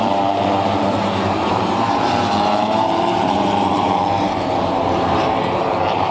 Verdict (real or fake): fake